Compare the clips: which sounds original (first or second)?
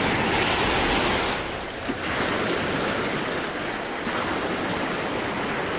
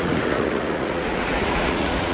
first